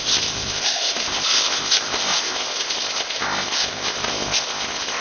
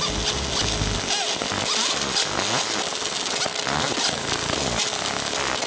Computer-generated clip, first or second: first